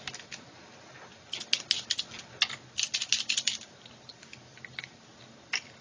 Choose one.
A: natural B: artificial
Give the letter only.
A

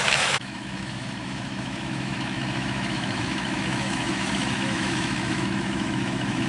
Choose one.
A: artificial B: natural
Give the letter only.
A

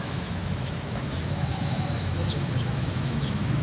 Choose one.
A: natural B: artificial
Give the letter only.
B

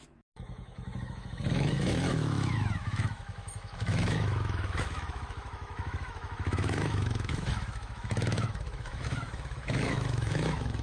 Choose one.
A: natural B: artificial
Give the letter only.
B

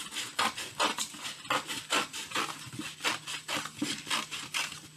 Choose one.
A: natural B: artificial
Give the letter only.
A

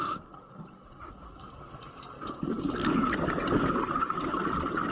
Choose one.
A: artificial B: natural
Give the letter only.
B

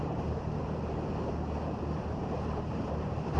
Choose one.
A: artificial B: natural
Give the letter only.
B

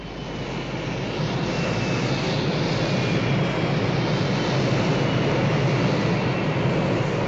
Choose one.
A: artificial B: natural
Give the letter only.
B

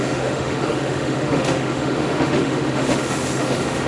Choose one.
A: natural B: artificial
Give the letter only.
B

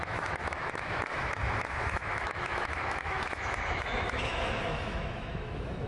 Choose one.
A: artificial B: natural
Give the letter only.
A